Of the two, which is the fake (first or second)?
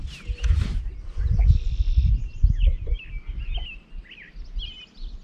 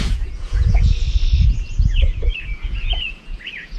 second